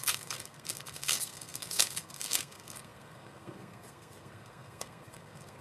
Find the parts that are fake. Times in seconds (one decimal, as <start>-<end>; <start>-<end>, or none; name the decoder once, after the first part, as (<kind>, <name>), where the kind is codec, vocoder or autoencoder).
0.0-5.6 (codec, SNAC)